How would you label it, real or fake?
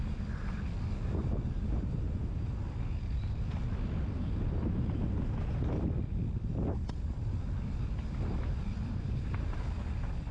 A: real